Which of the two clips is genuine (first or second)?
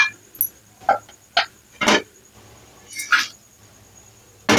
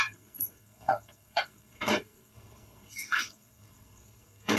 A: first